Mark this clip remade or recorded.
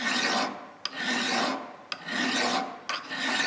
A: recorded